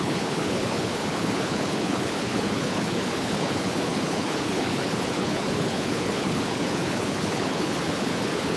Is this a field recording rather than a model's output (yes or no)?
no